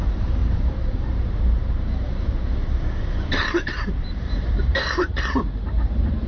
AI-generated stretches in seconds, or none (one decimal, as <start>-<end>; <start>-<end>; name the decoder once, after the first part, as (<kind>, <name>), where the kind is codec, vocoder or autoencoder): 0.0-6.3 (vocoder, BigVGAN v2)

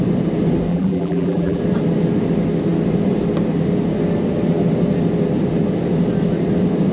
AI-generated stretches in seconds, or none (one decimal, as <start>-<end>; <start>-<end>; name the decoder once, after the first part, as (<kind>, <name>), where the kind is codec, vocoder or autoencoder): 0.7-1.6 (vocoder, BigVGAN v2)

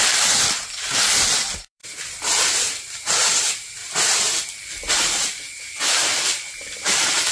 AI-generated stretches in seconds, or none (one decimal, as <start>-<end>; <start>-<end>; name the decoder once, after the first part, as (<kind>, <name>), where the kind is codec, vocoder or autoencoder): 0.0-3.8 (vocoder, BigVGAN v2); 4.9-7.3

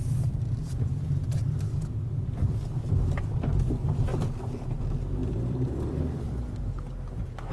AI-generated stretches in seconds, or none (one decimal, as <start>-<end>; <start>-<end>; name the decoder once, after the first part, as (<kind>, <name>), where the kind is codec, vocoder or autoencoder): 5.2-6.0 (vocoder, BigVGAN v2)

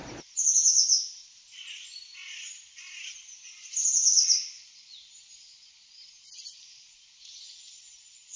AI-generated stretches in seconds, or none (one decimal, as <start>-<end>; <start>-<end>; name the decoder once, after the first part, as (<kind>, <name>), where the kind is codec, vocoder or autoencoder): none

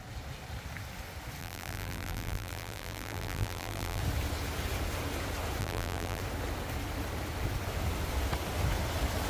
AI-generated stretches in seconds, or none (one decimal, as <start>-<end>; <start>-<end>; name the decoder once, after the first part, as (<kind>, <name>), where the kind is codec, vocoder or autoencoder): 1.4-4.0 (vocoder, BigVGAN v2); 5.6-6.2

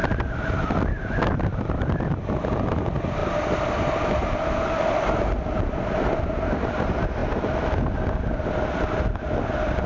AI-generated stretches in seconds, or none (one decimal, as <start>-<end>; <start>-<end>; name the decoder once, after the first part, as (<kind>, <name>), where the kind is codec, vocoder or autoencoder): 0.0-2.6 (vocoder, BigVGAN v2)

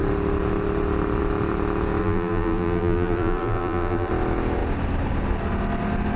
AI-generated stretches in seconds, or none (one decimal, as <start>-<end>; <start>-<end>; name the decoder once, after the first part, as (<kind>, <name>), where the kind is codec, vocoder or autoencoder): 2.0-4.1 (vocoder, BigVGAN v2)